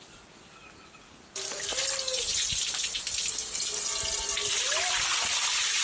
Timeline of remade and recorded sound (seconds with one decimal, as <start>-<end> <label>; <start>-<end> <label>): 0.0-5.8 recorded